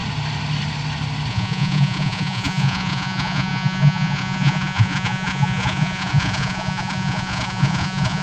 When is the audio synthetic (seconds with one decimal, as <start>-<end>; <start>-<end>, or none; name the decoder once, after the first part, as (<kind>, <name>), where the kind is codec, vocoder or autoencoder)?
1.3-8.2 (vocoder, Vocos)